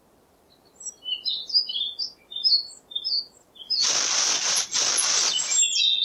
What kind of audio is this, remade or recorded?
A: recorded